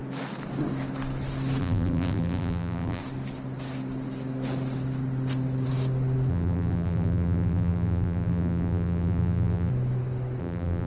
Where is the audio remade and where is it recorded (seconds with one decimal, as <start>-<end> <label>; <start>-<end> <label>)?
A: 0.0-1.6 recorded; 1.6-3.0 remade; 3.0-6.3 recorded; 6.3-9.7 remade; 9.7-10.4 recorded; 10.4-10.9 remade